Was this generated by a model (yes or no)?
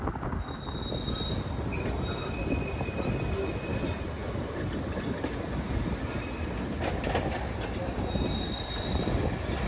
no